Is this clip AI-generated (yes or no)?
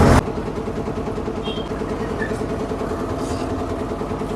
no